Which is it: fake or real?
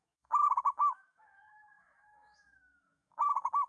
fake